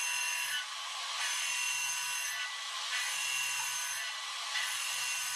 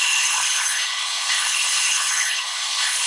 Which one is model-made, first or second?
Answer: second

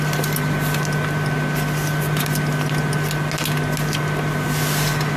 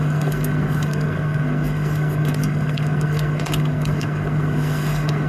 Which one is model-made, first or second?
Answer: second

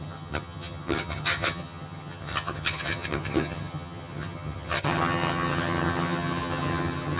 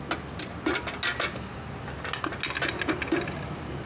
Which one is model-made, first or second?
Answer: first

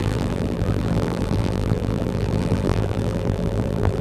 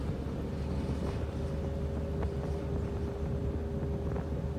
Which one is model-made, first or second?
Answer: first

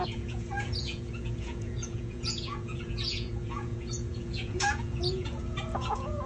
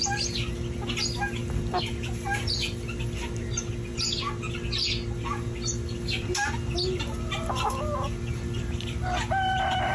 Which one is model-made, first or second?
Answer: first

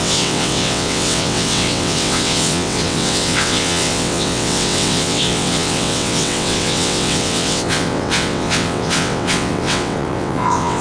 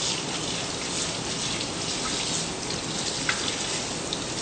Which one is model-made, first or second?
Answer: first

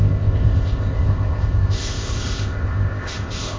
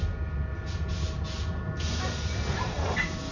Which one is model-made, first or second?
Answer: first